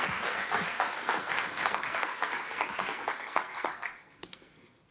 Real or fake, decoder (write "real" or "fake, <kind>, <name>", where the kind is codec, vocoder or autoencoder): fake, codec, SNAC